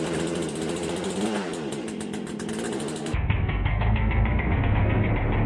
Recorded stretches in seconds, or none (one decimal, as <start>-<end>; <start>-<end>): 0.0-3.0; 5.1-5.5